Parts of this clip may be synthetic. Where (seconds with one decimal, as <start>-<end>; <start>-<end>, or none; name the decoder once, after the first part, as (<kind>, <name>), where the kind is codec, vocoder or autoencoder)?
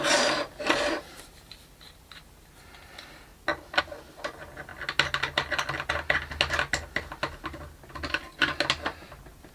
0.0-3.3 (vocoder, BigVGAN v2); 3.8-4.7